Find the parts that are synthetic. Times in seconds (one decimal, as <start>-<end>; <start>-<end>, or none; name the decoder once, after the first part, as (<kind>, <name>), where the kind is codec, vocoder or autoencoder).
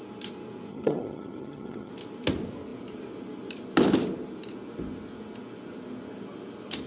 0.7-1.9 (vocoder, HiFi-GAN)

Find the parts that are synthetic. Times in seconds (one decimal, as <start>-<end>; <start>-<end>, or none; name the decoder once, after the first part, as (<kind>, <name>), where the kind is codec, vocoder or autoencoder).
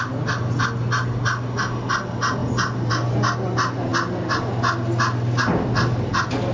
none